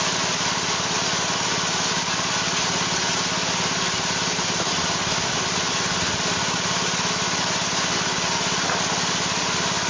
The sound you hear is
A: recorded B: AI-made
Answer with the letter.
A